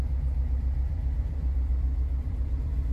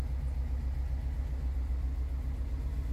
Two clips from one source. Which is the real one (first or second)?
second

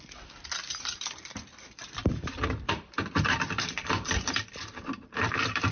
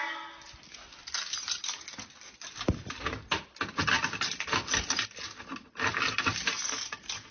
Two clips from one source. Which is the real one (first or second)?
second